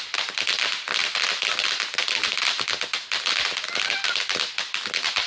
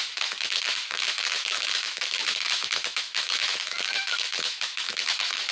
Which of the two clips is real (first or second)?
first